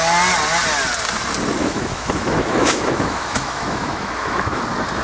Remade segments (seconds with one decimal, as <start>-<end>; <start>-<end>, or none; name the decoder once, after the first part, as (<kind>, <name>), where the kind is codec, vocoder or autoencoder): 1.6-4.6 (autoencoder, DAC-VAE)